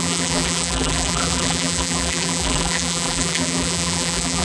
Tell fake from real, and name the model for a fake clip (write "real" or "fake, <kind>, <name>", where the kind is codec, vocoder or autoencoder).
fake, vocoder, BigVGAN v2